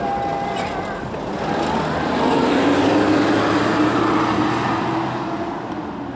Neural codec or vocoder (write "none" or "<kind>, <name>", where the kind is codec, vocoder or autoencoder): none